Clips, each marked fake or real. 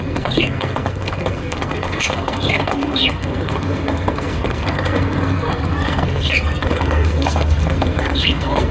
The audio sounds fake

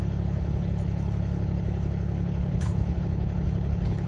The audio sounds fake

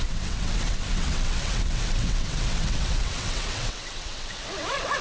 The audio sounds fake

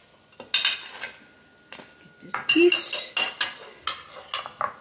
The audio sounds real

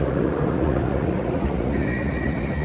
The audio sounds fake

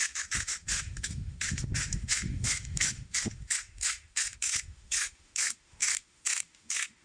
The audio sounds fake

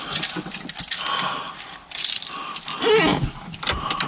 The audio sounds real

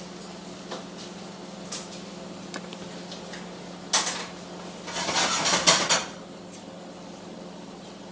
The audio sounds real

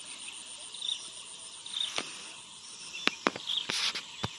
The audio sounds real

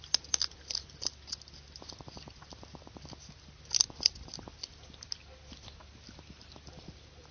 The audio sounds real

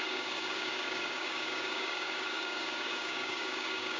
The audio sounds fake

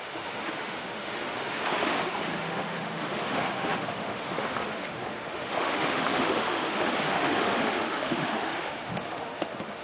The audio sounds fake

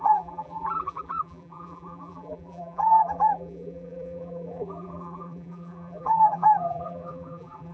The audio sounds fake